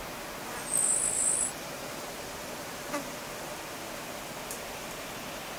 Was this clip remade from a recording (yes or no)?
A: no